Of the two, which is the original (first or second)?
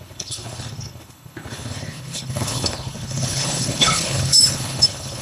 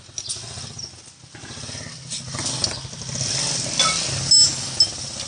second